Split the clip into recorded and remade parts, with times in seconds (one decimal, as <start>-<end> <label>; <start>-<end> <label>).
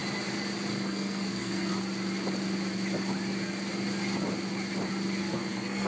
0.0-0.7 recorded; 0.7-1.7 remade; 1.7-5.2 recorded; 5.2-5.9 remade